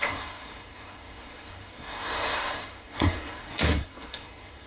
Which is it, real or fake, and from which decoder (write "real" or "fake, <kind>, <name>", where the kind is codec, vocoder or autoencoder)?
fake, codec, SNAC